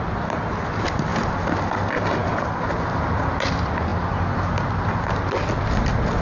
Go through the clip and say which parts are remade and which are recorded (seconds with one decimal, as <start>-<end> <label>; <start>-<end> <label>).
0.0-6.2 recorded